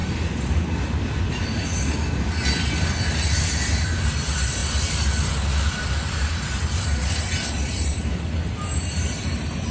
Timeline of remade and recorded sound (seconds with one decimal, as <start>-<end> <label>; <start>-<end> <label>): 0.0-2.1 remade; 2.1-4.6 recorded; 4.6-9.7 remade